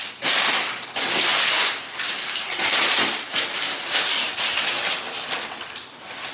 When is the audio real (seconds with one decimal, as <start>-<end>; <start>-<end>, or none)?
0.0-1.3; 5.0-6.3